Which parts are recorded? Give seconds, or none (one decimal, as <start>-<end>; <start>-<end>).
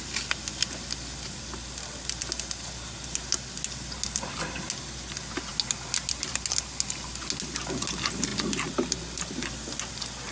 0.0-10.3